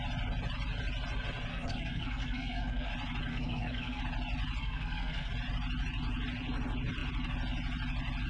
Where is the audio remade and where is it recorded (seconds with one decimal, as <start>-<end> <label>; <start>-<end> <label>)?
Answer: 0.0-1.5 recorded; 1.5-2.9 remade; 2.9-3.3 recorded; 3.3-4.0 remade; 4.0-4.6 recorded; 4.6-5.3 remade; 5.3-8.3 recorded